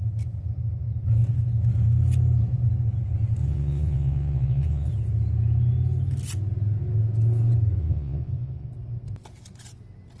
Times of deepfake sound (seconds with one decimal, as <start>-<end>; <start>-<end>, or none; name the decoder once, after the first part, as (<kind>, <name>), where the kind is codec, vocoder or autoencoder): 3.4-4.9 (vocoder, Vocos); 7.8-8.7